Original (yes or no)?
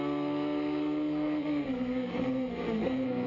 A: no